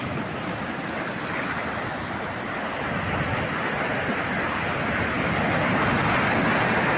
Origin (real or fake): real